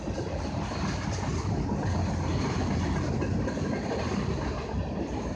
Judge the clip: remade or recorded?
recorded